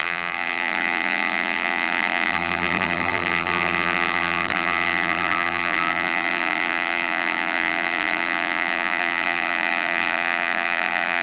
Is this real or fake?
fake